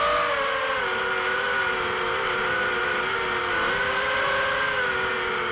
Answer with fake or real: real